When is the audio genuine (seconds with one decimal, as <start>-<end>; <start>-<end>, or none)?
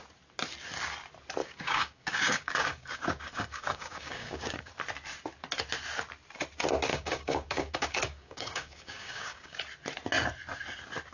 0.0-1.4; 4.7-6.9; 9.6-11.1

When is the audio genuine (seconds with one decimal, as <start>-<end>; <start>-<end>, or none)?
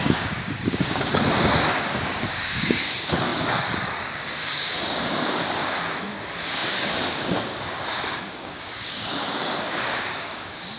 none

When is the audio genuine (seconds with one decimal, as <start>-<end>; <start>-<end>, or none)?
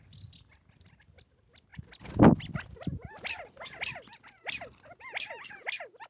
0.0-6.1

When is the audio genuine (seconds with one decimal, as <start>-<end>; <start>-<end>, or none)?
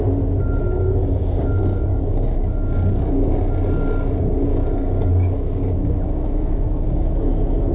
0.0-0.6; 3.4-4.5; 7.3-7.7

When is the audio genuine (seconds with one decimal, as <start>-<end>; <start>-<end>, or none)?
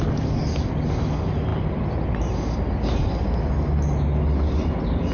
0.0-5.1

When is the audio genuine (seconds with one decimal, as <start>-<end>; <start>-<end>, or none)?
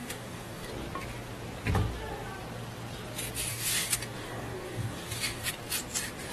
0.7-3.5; 5.5-6.3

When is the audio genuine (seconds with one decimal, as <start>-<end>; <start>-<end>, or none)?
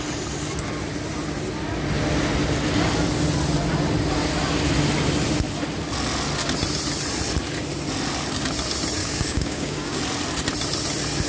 0.0-9.0; 10.0-11.3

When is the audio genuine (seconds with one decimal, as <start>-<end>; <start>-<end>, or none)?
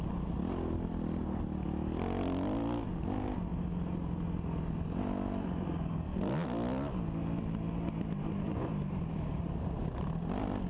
0.0-10.7